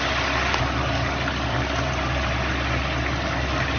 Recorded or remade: recorded